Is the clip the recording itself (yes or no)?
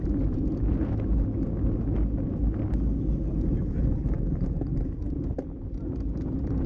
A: yes